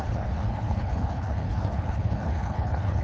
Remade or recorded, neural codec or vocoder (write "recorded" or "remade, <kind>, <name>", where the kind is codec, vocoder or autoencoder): remade, codec, HILCodec